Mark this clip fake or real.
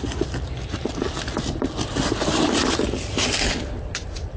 real